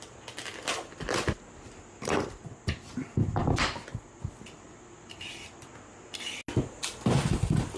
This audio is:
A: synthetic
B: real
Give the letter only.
B